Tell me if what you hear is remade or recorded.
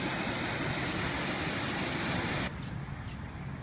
recorded